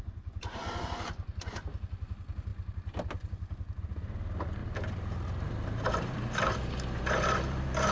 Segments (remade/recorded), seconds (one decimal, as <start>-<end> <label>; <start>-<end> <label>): 0.0-4.6 recorded; 4.6-7.9 remade